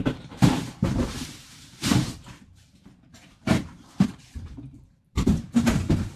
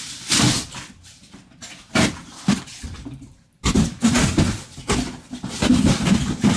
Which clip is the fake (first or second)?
first